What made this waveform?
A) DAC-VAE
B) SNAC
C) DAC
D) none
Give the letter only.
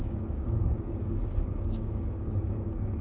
C